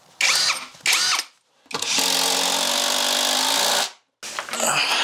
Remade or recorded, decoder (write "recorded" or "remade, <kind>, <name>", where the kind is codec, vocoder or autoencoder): recorded